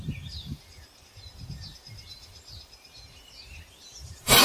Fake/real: fake